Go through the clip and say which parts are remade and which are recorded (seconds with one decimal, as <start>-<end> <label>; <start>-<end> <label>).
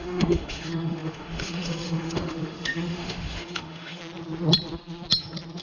0.0-4.0 remade; 4.0-5.6 recorded